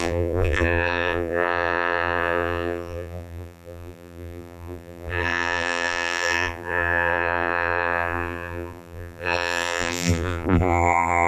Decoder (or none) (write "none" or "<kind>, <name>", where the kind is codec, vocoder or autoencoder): vocoder, BigVGAN v2